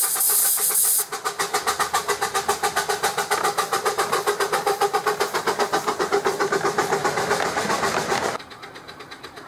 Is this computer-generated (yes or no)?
no